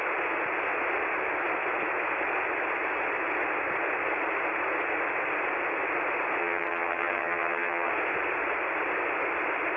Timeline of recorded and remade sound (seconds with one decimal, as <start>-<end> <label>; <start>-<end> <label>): 0.0-6.4 recorded; 6.4-7.9 remade; 7.9-9.8 recorded